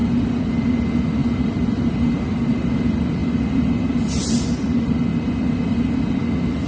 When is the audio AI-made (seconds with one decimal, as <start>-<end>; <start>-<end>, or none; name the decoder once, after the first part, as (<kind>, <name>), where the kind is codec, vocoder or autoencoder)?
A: 0.0-0.5 (vocoder, BigVGAN v2); 1.2-2.8; 3.2-6.0